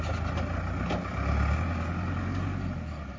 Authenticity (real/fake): real